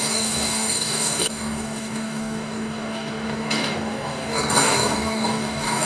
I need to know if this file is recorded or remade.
remade